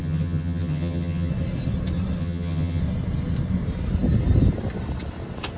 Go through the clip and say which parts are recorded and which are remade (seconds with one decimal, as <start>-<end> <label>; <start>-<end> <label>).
0.0-1.3 remade; 1.3-2.2 recorded; 2.2-2.8 remade; 2.8-5.6 recorded